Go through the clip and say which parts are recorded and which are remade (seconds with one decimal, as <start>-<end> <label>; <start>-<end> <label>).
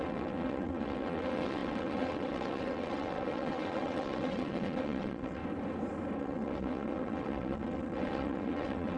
0.0-5.4 remade; 5.4-6.2 recorded; 6.2-9.0 remade